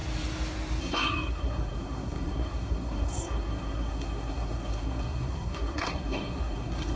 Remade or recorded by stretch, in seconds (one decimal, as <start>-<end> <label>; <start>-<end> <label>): 0.0-0.8 recorded; 0.8-7.0 remade